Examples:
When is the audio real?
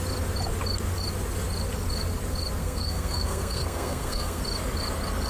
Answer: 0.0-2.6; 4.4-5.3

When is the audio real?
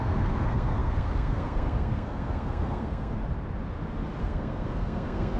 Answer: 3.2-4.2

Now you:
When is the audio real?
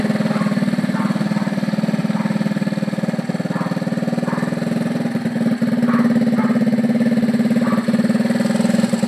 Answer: 0.0-9.1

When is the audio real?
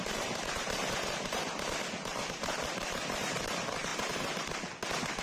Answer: 3.9-5.2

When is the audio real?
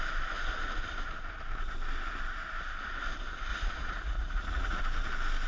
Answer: 0.0-3.5; 4.8-5.5